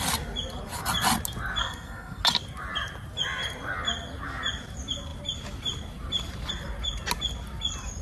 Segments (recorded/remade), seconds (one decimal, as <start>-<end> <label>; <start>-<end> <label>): 0.0-1.6 recorded; 1.6-2.2 remade; 2.2-8.0 recorded